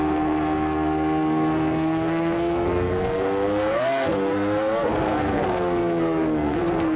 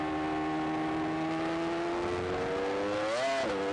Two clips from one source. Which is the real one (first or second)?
second